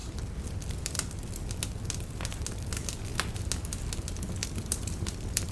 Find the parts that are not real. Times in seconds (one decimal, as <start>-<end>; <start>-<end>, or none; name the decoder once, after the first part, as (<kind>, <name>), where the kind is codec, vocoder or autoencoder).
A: 4.4-5.5 (vocoder, BigVGAN v2)